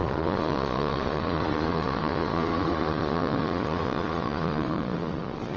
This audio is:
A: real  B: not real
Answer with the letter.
B